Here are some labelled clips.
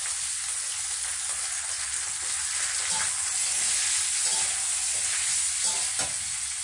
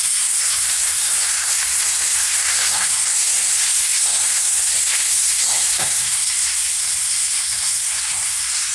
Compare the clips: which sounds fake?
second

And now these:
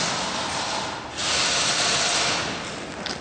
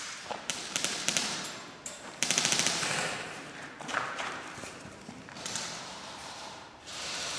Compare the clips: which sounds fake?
second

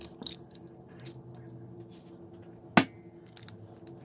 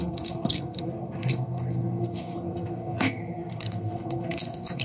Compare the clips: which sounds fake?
second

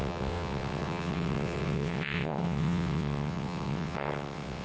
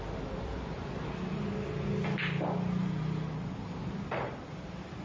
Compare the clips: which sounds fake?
first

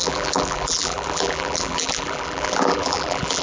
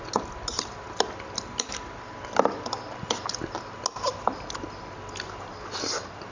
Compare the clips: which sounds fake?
first